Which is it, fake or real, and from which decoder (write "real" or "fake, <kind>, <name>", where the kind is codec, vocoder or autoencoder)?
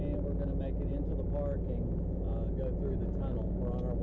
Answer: real